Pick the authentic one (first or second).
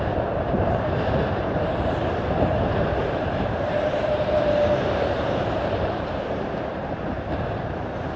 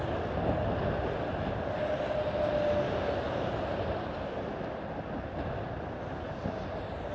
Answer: second